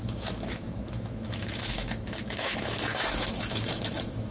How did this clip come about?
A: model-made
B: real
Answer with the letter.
A